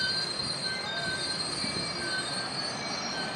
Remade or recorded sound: recorded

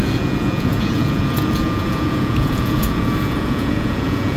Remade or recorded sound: remade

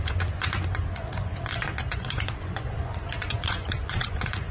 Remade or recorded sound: remade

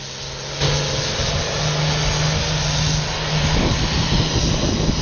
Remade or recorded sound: recorded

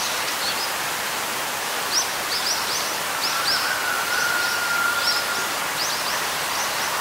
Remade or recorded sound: recorded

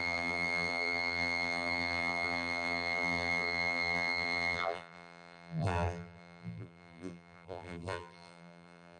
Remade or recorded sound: remade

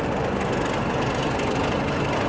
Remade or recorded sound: recorded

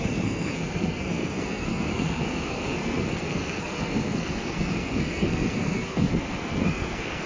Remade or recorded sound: remade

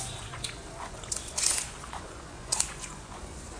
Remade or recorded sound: remade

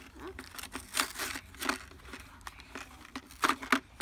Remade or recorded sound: recorded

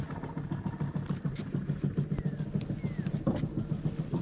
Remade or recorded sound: recorded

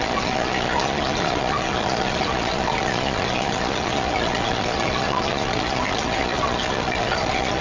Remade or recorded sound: remade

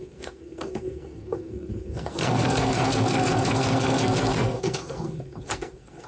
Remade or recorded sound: remade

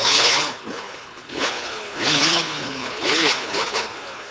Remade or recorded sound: remade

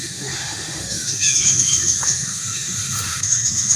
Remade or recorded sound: remade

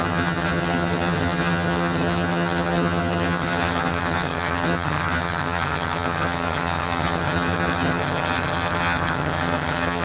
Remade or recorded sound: remade